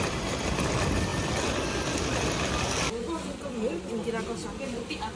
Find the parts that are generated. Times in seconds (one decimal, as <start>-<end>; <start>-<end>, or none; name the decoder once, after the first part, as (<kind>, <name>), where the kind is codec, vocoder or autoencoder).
none